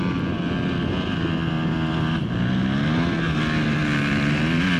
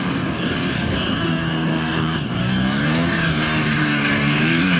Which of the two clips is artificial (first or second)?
second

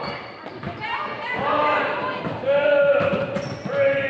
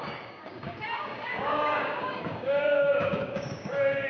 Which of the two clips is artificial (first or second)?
second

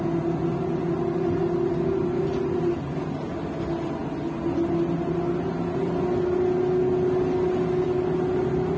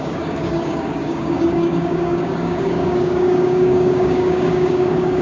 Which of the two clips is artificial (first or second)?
second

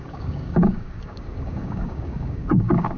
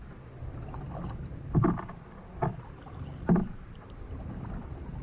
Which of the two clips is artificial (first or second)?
first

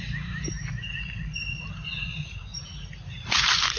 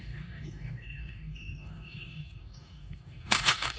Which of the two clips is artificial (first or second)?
second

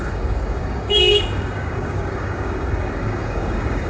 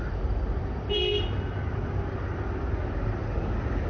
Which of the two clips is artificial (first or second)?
first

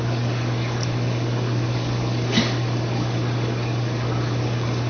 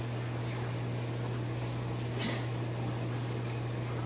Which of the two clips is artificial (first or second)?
first